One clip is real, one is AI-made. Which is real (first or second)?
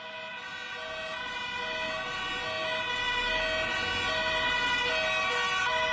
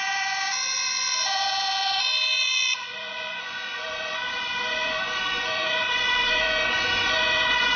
first